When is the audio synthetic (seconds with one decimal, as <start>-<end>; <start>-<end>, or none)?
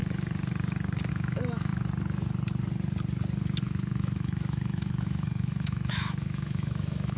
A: 1.1-1.7; 3.6-7.2